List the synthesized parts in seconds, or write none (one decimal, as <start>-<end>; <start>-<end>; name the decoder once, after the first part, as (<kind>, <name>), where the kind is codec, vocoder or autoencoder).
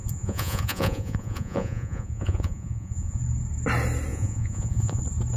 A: 0.0-3.2 (vocoder, Vocos); 4.1-5.0